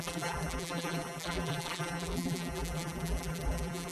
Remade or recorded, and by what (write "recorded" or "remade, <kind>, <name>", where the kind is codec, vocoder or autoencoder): remade, vocoder, BigVGAN v2